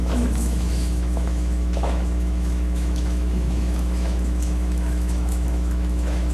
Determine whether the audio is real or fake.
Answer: fake